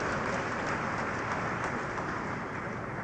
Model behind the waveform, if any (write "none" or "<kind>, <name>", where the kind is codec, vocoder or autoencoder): none